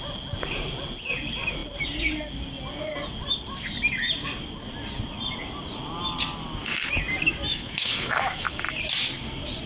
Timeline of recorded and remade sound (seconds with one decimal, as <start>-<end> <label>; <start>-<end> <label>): 0.0-7.5 recorded; 7.5-8.6 remade; 8.6-9.7 recorded